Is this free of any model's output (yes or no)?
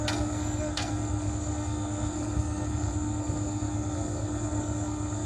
no